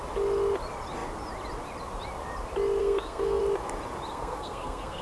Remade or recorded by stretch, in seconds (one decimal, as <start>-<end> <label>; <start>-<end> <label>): 0.0-2.8 recorded; 2.8-3.4 remade; 3.4-4.1 recorded; 4.1-5.0 remade